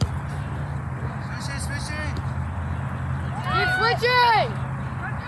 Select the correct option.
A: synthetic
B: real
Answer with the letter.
B